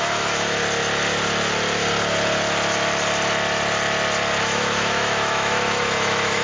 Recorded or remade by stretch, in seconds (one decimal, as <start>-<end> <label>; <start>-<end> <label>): 0.0-0.6 remade; 0.6-4.4 recorded; 4.4-6.4 remade